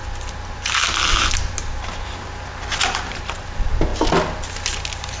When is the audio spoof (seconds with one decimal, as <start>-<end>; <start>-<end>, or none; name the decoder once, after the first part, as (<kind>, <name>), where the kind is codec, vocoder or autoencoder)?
3.1-3.9 (vocoder, BigVGAN v2)